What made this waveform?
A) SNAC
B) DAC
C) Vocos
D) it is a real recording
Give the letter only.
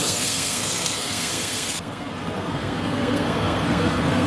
A